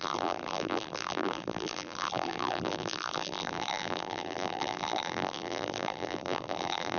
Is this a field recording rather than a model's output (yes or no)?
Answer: no